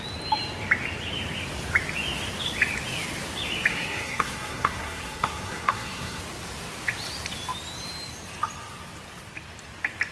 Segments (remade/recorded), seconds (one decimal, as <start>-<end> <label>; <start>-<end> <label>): 0.0-3.7 recorded; 3.7-6.2 remade; 6.2-10.1 recorded

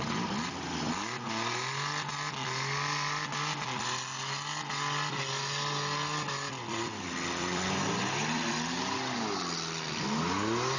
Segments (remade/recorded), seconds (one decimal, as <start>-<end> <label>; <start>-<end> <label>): 0.0-6.5 recorded; 6.5-8.5 remade; 8.5-10.8 recorded

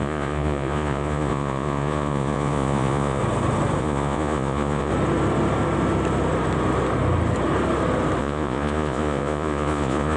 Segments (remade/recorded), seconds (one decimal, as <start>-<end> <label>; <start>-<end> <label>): 0.0-3.2 remade; 3.2-3.8 recorded; 3.8-4.9 remade; 4.9-8.2 recorded; 8.2-10.2 remade

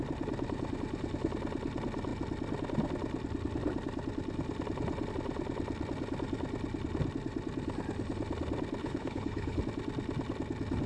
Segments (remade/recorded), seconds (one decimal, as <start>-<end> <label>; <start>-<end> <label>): 0.0-8.8 recorded; 8.8-9.6 remade; 9.6-10.9 recorded

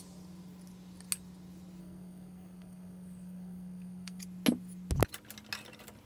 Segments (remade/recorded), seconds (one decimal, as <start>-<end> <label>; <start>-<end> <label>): 0.0-1.8 recorded; 1.8-4.2 remade; 4.2-6.1 recorded

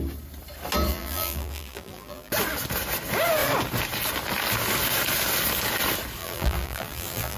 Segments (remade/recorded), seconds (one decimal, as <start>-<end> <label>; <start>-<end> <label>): 0.0-0.9 recorded; 0.9-2.3 remade; 2.3-6.2 recorded; 6.2-7.4 remade